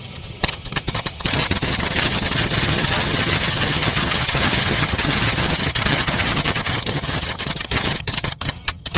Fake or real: fake